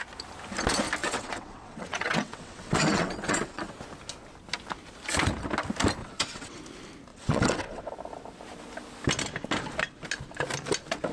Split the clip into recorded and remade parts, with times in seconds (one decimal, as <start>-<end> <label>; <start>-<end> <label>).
0.0-1.0 recorded; 1.0-3.7 remade; 3.7-6.0 recorded; 6.0-6.6 remade; 6.6-7.1 recorded; 7.1-7.9 remade; 7.9-11.1 recorded